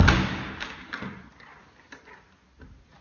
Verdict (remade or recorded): recorded